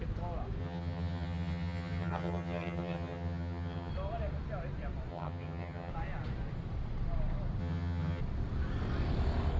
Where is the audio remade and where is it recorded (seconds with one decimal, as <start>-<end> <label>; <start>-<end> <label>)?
0.0-0.6 recorded; 0.6-3.9 remade; 3.9-5.1 recorded; 5.1-5.9 remade; 5.9-7.6 recorded; 7.6-8.2 remade; 8.2-9.6 recorded